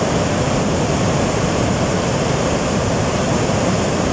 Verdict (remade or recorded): remade